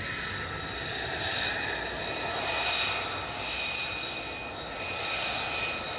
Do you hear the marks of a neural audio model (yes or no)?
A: no